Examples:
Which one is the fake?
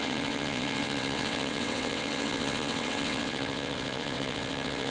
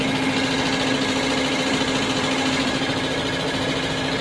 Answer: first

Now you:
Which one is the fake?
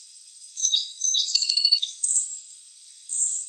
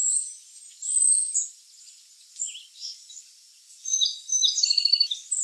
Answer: first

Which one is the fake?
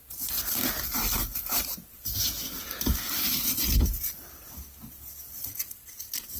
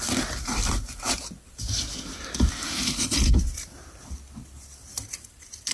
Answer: second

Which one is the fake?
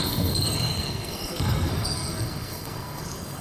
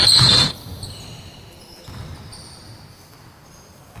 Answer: first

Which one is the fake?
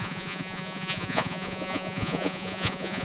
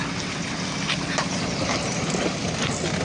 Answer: first